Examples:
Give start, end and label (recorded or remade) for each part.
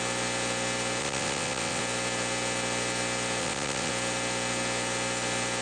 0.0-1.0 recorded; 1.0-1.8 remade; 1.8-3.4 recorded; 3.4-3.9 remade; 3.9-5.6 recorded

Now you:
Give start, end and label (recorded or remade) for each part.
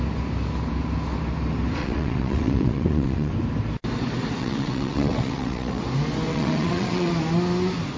0.0-1.8 recorded; 1.8-3.3 remade; 3.3-4.4 recorded; 4.4-5.8 remade; 5.8-6.3 recorded; 6.3-7.1 remade; 7.1-8.0 recorded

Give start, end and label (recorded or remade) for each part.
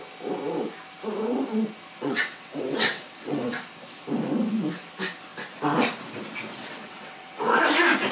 0.0-2.0 recorded; 2.0-3.5 remade; 3.5-6.6 recorded; 6.6-7.6 remade; 7.6-8.1 recorded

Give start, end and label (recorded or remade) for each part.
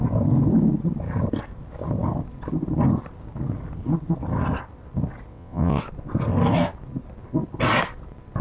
0.0-5.3 recorded; 5.3-5.8 remade; 5.8-8.4 recorded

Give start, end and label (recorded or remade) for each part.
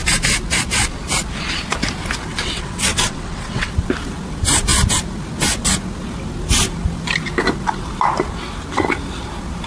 0.0-2.3 recorded; 2.3-3.7 remade; 3.7-9.7 recorded